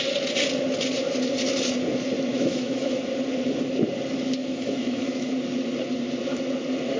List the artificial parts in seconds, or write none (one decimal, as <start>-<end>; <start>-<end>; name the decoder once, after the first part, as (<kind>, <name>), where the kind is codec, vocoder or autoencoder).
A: 2.3-3.0 (autoencoder, DAC-VAE); 4.4-5.3